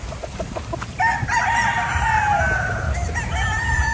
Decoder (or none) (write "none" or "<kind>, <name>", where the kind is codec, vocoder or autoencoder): none